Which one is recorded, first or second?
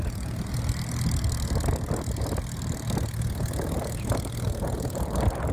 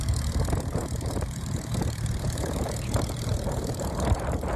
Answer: first